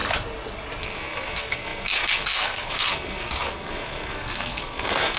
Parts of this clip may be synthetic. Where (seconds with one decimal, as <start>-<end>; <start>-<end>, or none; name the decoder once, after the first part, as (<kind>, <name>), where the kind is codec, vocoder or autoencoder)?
0.8-5.2 (codec, SNAC)